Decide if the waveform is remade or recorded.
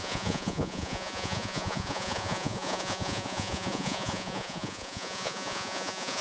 remade